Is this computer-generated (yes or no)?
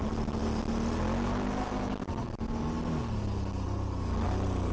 no